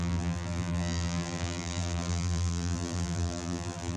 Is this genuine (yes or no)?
no